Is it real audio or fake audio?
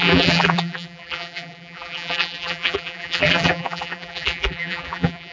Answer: fake